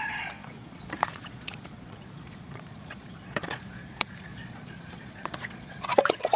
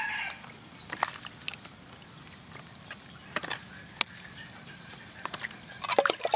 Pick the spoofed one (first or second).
first